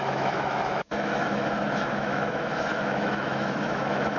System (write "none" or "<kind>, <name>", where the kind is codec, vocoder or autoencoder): autoencoder, DAC-VAE